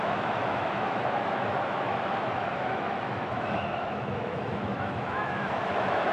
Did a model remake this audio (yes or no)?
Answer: yes